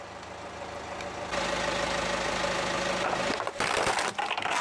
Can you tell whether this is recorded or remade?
recorded